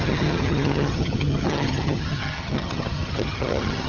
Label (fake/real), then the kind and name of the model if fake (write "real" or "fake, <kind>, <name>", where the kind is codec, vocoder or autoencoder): fake, vocoder, HiFi-GAN